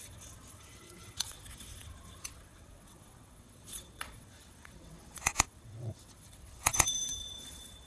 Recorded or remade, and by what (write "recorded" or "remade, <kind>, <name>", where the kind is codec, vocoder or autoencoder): remade, vocoder, WaveNeXt